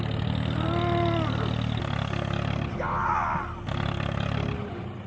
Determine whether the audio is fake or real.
real